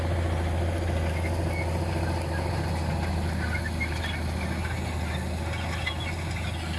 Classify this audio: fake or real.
real